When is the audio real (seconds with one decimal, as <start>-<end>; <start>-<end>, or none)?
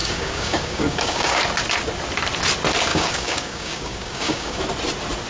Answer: 1.4-2.9; 4.6-5.3